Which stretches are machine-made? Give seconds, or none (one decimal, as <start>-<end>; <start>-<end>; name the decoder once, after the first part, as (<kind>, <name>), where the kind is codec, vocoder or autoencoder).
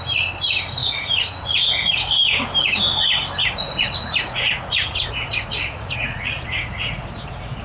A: 0.8-2.1 (vocoder, Vocos); 3.4-7.6